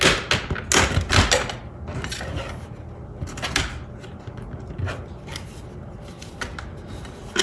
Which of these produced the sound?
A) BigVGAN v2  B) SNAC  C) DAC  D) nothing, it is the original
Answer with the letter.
D